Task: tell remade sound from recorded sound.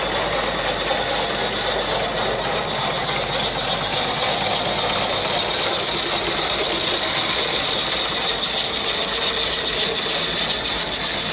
recorded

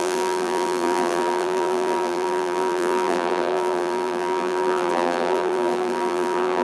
remade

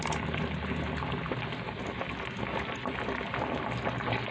recorded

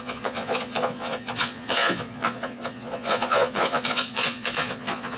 remade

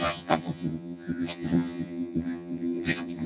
remade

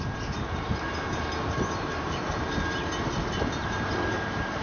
remade